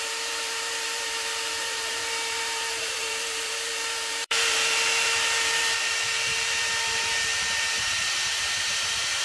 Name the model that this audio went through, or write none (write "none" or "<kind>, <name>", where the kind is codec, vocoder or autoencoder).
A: vocoder, BigVGAN v2